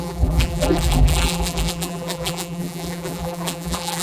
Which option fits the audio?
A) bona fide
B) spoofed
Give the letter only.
B